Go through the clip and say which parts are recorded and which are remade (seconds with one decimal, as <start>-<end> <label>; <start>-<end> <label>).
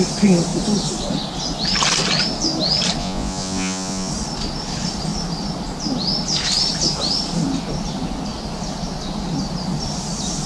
0.0-3.0 recorded; 3.0-4.1 remade; 4.1-10.5 recorded